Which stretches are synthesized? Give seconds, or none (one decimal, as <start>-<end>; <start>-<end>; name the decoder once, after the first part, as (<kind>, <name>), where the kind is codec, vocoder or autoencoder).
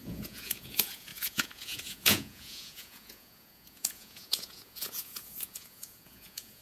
0.0-6.6 (vocoder, Vocos)